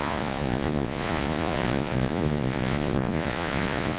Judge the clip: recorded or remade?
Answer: remade